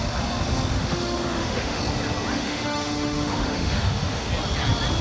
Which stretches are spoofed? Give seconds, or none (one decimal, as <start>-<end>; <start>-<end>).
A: 0.8-1.8; 2.3-4.3